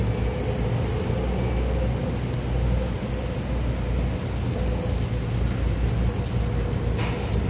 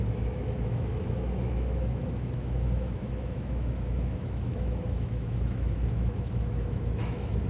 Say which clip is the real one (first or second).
first